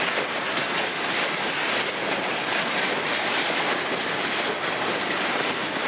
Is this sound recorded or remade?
recorded